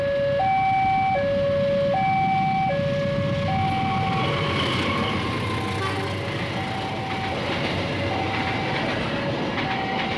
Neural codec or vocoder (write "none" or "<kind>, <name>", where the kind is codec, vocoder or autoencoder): none